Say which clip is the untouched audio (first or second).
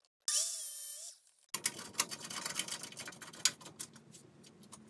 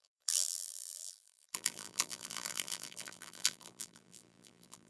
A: first